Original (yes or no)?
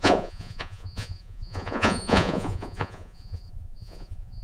no